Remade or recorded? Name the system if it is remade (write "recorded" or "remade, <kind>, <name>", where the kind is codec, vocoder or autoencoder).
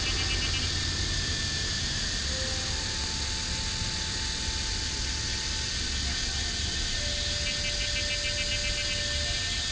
recorded